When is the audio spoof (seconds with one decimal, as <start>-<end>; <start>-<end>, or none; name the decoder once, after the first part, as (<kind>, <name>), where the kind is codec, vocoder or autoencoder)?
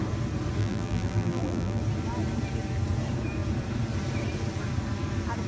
0.6-1.8 (vocoder, BigVGAN v2)